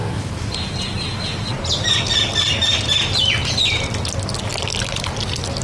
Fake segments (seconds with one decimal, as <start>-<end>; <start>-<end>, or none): 0.0-0.5